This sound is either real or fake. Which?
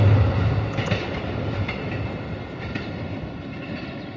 real